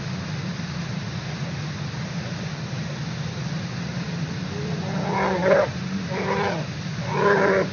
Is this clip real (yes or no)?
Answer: yes